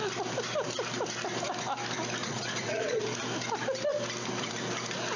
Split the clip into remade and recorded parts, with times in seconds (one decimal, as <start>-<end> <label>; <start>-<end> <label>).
0.0-2.2 recorded; 2.2-3.0 remade; 3.0-5.2 recorded